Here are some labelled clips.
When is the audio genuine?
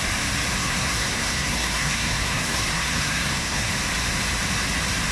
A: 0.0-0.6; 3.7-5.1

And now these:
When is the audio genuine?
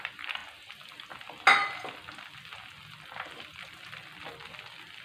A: 0.0-5.0